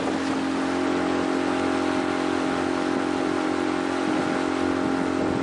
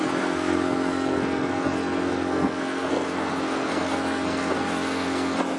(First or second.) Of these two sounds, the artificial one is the second